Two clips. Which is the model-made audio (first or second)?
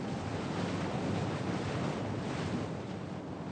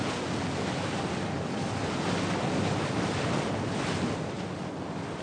first